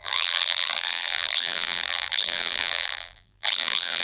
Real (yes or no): no